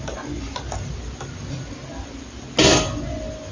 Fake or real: real